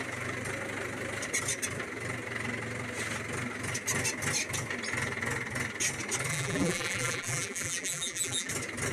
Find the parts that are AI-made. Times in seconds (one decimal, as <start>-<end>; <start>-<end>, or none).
6.3-8.5